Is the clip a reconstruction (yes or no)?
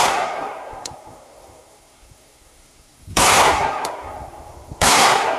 yes